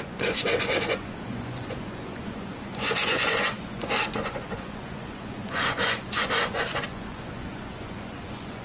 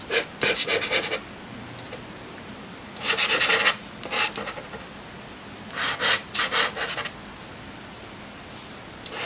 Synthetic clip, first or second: first